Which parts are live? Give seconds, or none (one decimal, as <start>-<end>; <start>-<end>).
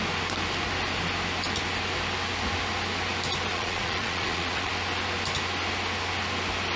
0.0-3.5; 4.7-6.8